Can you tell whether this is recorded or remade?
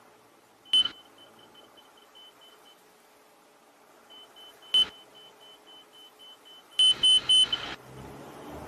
recorded